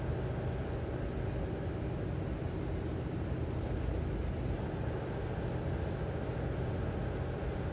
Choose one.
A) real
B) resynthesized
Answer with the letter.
A